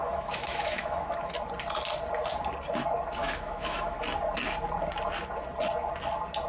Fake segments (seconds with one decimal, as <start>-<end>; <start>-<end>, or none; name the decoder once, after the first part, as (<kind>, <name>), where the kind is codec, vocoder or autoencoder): 0.0-1.3 (autoencoder, DAC-VAE); 3.2-4.0